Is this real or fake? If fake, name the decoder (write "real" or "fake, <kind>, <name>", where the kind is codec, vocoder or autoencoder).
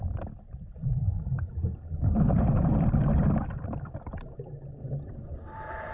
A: fake, vocoder, BigVGAN v2